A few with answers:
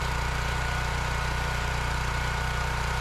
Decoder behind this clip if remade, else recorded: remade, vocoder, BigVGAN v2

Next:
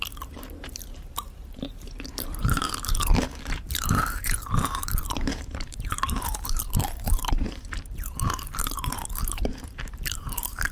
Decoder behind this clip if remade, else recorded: remade, vocoder, BigVGAN v2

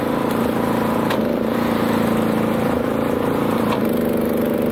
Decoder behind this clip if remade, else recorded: remade, vocoder, BigVGAN v2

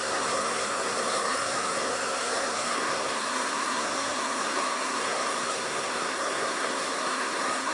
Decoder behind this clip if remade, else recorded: remade, codec, SNAC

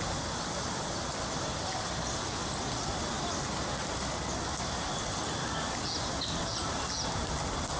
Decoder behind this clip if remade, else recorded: recorded